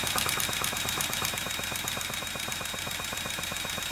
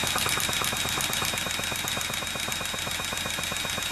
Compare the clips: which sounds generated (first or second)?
first